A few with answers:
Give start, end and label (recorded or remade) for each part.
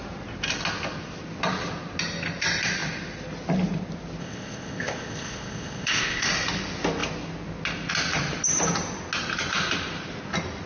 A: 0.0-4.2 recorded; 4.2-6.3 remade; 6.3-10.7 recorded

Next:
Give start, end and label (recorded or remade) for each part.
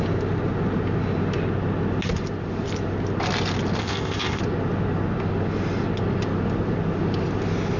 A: 0.0-3.8 recorded; 3.8-4.4 remade; 4.4-7.8 recorded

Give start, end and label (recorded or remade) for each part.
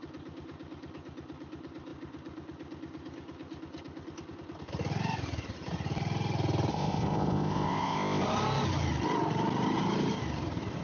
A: 0.0-6.7 recorded; 6.7-8.2 remade; 8.2-10.8 recorded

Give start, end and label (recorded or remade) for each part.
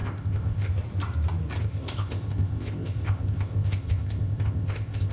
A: 0.0-0.7 remade; 0.7-1.6 recorded; 1.6-5.1 remade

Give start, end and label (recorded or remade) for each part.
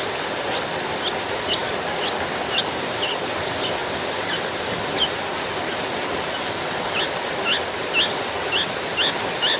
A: 0.0-9.6 recorded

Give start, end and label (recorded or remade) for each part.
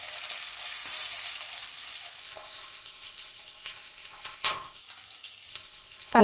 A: 0.0-2.2 recorded; 2.2-4.8 remade; 4.8-5.5 recorded; 5.5-6.2 remade